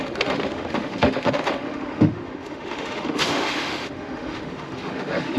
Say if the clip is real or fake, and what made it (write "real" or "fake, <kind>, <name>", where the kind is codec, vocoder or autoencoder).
fake, autoencoder, DAC-VAE